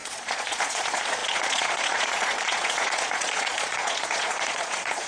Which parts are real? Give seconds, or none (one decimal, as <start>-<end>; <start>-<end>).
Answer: none